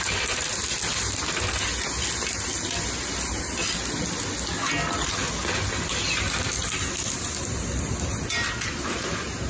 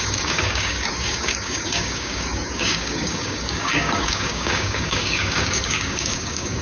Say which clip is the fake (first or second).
second